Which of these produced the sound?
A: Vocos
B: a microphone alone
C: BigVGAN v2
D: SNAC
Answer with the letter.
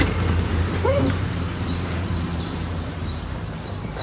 C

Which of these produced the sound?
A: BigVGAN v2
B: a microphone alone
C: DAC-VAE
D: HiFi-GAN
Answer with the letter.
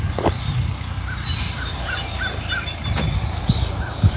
A